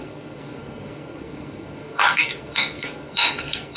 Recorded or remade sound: remade